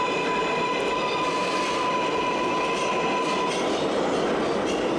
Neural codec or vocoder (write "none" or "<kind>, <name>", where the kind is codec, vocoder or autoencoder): none